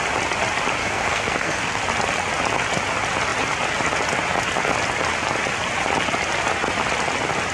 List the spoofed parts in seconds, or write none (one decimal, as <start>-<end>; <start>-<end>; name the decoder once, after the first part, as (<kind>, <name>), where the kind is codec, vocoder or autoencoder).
0.8-1.8 (codec, SNAC)